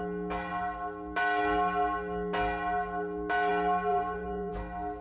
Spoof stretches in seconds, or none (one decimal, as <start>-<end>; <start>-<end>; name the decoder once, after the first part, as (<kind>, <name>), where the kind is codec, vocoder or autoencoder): 3.9-4.5 (vocoder, BigVGAN v2)